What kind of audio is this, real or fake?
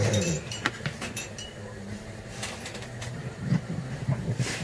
fake